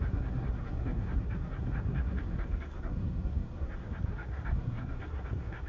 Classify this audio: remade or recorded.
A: remade